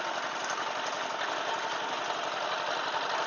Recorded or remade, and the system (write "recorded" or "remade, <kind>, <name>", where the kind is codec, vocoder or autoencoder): recorded